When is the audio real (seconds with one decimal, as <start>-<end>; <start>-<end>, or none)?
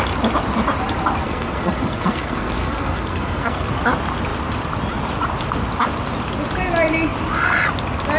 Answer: 0.0-1.2; 3.7-8.2